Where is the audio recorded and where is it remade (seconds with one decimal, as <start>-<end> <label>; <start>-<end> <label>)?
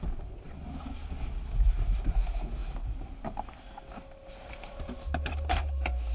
0.0-6.1 recorded